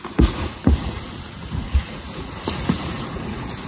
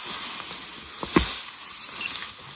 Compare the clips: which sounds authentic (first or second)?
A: second